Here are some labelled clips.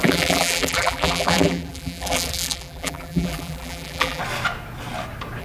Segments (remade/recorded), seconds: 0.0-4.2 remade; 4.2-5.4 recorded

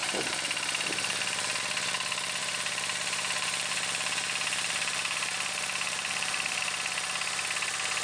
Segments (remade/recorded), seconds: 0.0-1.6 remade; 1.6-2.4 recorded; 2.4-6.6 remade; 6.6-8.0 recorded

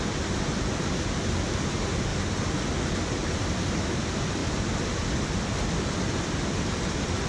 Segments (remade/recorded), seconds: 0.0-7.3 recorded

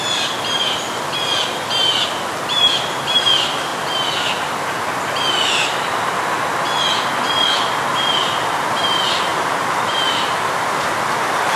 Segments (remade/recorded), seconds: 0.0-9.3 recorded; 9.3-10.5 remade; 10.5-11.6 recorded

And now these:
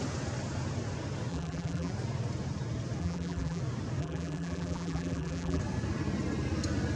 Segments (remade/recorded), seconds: 0.0-1.3 recorded; 1.3-1.9 remade; 1.9-3.0 recorded; 3.0-3.6 remade; 3.6-4.0 recorded; 4.0-5.6 remade; 5.6-7.0 recorded

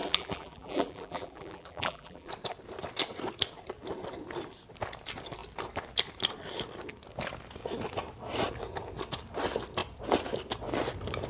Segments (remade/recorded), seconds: 0.0-2.3 remade; 2.3-11.3 recorded

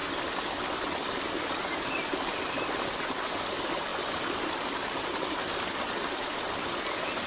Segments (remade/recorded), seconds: 0.0-0.9 recorded; 0.9-3.9 remade; 3.9-6.4 recorded; 6.4-7.3 remade

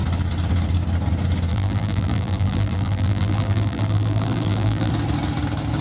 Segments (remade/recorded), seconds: 0.0-1.5 recorded; 1.5-4.9 remade; 4.9-5.8 recorded